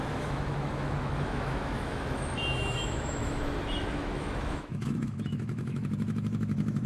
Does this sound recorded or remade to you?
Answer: remade